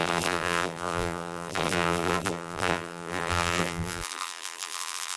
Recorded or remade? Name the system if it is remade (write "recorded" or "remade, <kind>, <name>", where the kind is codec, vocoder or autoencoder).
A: remade, vocoder, BigVGAN v2